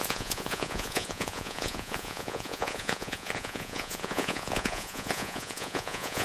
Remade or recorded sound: remade